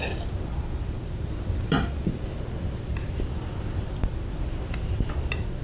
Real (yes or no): no